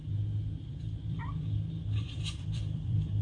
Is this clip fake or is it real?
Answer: fake